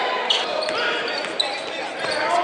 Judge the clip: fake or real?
real